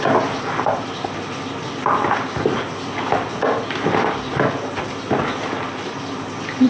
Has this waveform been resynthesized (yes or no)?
no